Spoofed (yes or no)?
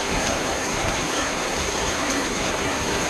yes